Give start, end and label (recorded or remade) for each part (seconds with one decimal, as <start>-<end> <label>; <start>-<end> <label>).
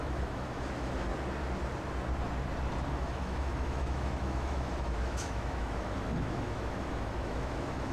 0.0-1.1 remade; 1.1-2.9 recorded; 2.9-7.9 remade